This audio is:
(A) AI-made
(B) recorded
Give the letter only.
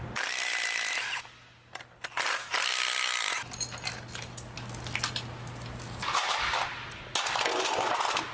B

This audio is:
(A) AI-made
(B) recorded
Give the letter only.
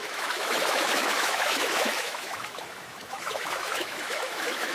A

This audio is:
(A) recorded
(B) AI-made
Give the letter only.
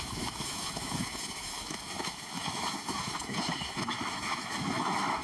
B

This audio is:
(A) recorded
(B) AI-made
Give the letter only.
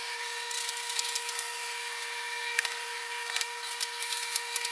B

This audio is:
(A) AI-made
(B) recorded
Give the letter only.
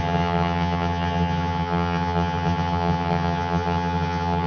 A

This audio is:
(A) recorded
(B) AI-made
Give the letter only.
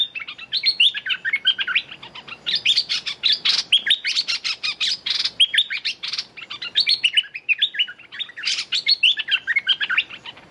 A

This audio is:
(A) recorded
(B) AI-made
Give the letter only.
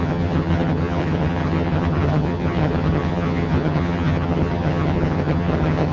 B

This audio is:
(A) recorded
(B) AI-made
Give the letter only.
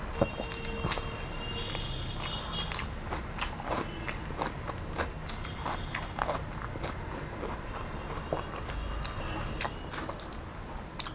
A